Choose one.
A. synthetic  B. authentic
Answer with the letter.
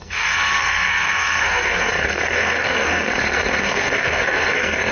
A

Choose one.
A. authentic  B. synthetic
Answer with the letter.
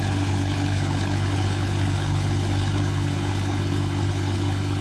B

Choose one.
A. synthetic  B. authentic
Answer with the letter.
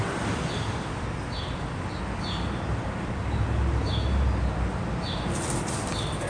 B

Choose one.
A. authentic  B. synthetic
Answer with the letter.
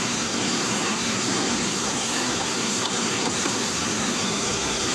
B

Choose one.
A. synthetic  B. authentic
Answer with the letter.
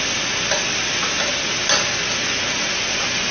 B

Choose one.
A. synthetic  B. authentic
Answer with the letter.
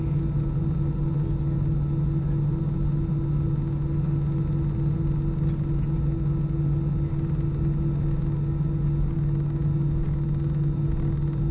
B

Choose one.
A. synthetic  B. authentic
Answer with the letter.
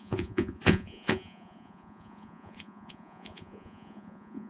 A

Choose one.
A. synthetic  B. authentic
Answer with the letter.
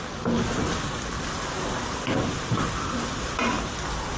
B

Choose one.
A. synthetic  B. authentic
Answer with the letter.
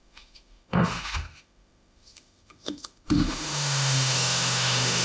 A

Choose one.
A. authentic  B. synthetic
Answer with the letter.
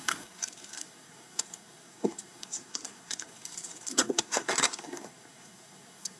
B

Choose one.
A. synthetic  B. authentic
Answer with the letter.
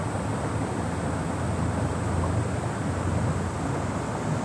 B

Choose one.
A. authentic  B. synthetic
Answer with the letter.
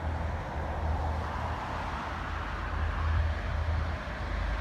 A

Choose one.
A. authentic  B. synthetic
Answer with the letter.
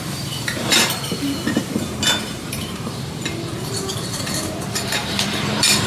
B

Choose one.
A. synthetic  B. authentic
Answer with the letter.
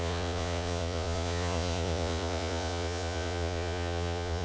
A